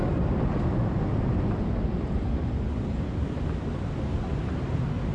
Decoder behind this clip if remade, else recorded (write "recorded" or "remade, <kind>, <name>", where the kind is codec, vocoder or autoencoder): recorded